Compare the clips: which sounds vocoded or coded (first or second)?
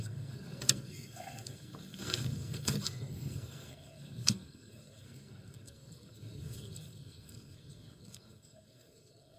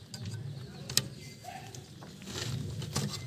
first